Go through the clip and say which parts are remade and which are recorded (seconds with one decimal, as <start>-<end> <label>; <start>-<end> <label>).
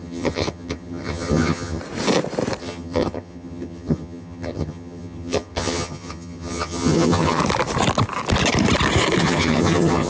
0.0-1.8 remade; 1.8-2.6 recorded; 2.6-7.4 remade; 7.4-9.2 recorded; 9.2-10.1 remade